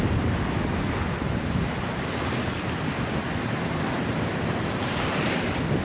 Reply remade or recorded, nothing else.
recorded